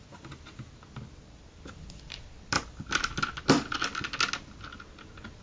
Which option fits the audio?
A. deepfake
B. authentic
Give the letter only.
B